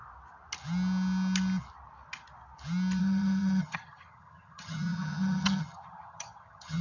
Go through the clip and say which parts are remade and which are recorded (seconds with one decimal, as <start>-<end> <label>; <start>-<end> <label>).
0.0-3.0 recorded; 3.0-6.8 remade